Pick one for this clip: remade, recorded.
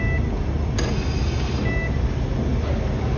recorded